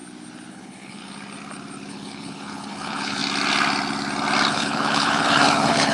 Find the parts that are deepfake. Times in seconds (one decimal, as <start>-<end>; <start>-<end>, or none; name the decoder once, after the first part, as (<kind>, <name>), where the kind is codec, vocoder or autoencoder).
0.5-1.0 (codec, HILCodec); 1.9-3.2; 4.5-5.9

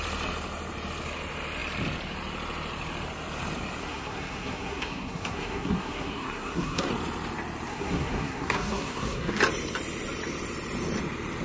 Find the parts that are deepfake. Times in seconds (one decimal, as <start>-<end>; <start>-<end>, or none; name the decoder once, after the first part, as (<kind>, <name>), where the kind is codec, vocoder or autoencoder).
3.8-6.9 (codec, SNAC); 7.7-9.4